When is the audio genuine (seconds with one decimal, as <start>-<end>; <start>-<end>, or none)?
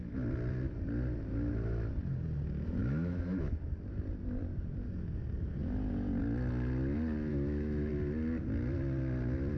0.0-2.8; 3.6-7.3; 7.9-9.6